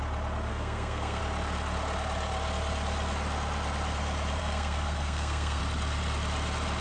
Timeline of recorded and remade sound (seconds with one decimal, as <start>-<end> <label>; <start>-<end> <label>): 0.0-0.5 recorded; 0.5-1.2 remade; 1.2-4.4 recorded; 4.4-5.6 remade; 5.6-6.8 recorded